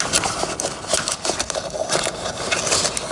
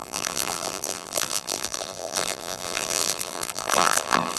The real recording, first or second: first